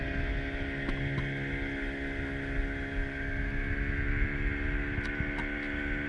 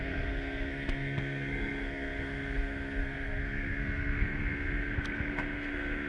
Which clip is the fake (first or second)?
second